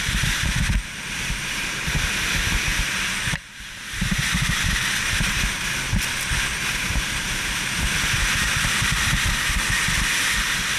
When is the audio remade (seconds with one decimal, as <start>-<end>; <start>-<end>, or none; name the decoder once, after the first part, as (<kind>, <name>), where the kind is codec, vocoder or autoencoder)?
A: 2.7-4.6 (vocoder, BigVGAN v2)